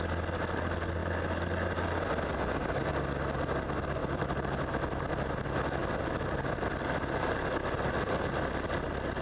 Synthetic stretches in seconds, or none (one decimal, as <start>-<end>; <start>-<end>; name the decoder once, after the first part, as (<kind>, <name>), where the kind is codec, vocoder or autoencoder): 4.0-4.7 (vocoder, BigVGAN v2)